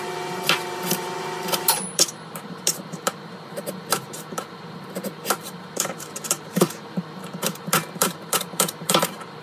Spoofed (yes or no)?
yes